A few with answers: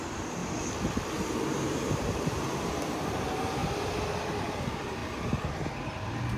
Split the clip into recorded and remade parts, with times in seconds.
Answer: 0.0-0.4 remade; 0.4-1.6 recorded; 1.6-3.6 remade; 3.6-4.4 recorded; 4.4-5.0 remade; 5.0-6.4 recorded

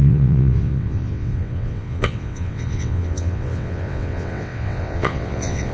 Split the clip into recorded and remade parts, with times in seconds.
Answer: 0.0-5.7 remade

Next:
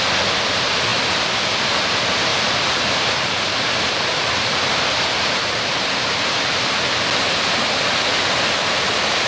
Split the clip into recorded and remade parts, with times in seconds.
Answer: 0.0-2.3 recorded; 2.3-6.7 remade; 6.7-9.3 recorded

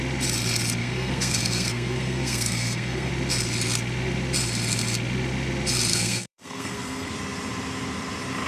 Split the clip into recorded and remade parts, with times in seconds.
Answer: 0.0-0.8 recorded; 0.8-3.1 remade; 3.1-5.9 recorded; 5.9-7.1 remade; 7.1-8.5 recorded

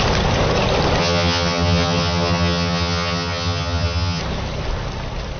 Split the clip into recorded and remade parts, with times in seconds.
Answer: 0.0-1.0 recorded; 1.0-4.2 remade; 4.2-5.4 recorded

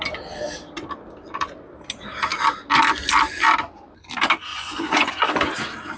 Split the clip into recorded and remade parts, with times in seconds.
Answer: 0.0-4.5 recorded; 4.5-5.3 remade; 5.3-6.0 recorded